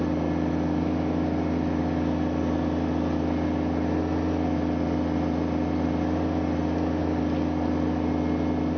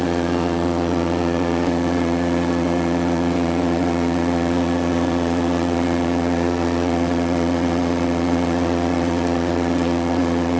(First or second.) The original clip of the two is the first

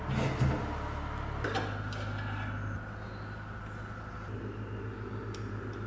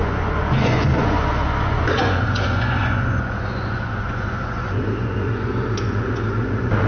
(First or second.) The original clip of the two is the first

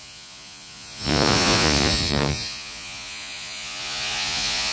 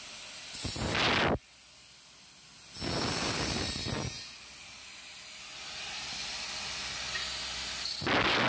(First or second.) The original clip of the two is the second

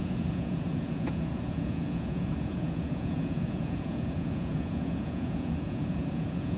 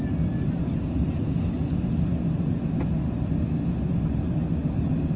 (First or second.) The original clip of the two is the second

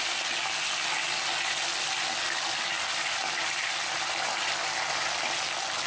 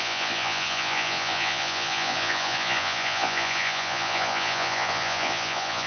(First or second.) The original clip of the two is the first